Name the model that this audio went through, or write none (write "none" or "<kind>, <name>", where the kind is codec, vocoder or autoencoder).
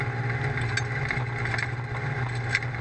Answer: none